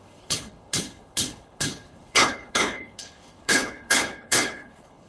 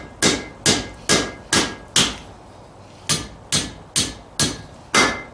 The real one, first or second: second